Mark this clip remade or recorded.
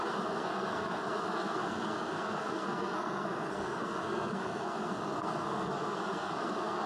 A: remade